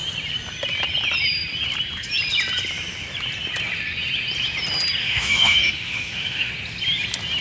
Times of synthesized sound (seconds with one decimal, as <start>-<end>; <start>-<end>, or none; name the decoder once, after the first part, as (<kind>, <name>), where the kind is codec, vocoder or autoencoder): 5.0-6.5 (autoencoder, DAC-VAE)